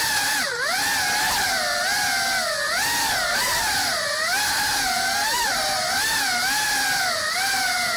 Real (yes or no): yes